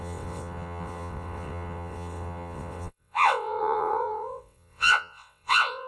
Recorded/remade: remade